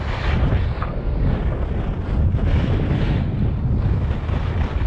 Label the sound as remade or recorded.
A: recorded